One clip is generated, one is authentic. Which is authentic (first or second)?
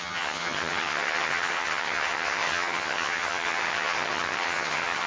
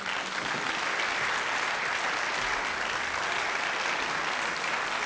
second